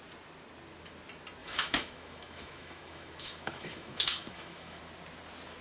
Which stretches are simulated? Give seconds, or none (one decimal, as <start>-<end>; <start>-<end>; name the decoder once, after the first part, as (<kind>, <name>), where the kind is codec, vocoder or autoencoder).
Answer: 1.4-4.8 (autoencoder, DAC-VAE)